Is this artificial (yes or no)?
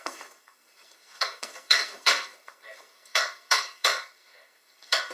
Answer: yes